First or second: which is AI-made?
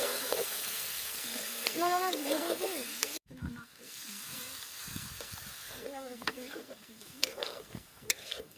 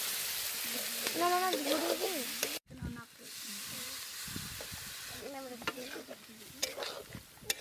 first